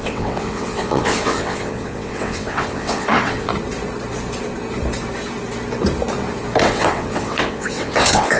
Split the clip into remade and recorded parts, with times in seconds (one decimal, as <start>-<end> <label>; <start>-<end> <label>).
0.0-3.5 remade; 3.5-6.6 recorded; 6.6-8.4 remade